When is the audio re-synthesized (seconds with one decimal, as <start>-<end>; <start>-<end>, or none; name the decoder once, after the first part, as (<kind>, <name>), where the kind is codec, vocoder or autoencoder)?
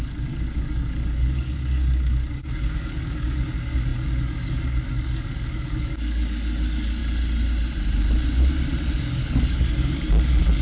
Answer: 0.0-7.0 (codec, DAC); 9.0-10.6